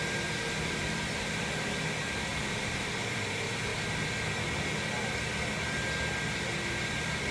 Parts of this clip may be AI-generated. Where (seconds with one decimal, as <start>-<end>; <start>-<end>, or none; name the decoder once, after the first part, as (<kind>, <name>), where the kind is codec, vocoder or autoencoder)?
0.0-2.3 (vocoder, BigVGAN v2); 3.1-3.7; 6.8-7.3